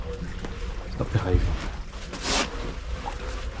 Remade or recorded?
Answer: recorded